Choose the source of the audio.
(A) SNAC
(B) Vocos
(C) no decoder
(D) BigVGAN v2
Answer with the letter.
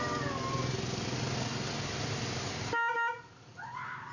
C